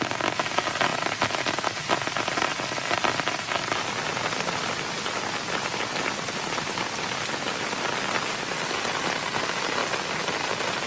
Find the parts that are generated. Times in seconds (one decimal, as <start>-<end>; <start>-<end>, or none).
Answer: none